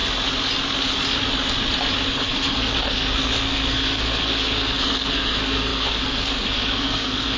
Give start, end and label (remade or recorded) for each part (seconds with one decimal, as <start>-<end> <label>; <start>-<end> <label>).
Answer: 0.0-2.1 recorded; 2.1-7.4 remade